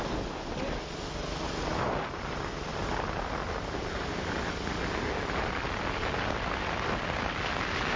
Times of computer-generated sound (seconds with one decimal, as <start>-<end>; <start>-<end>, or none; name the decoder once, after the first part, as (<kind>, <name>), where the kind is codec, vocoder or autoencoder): none